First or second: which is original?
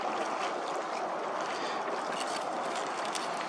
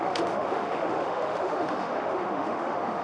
first